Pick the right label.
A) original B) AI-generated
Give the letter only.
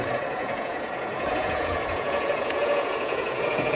B